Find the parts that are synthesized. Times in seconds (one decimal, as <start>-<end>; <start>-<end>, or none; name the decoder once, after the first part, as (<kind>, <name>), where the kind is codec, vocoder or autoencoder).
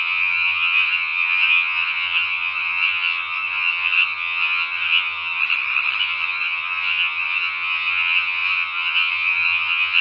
0.0-5.4 (vocoder, HiFi-GAN); 6.0-10.0